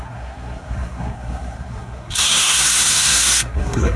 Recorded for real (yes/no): no